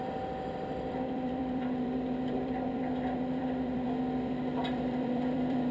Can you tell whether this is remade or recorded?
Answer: remade